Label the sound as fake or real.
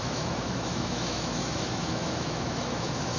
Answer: fake